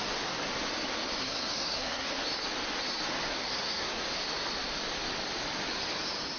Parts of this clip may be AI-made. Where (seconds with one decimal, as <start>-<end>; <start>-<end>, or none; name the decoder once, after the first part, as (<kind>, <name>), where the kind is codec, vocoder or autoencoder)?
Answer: 1.2-2.1 (codec, SNAC); 3.3-4.0